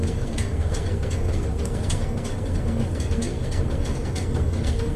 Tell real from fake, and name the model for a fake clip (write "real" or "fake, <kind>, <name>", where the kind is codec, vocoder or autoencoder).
fake, codec, SNAC